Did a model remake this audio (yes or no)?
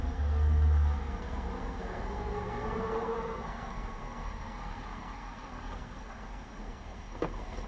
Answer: yes